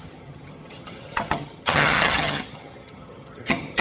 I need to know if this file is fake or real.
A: fake